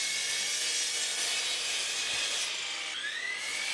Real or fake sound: real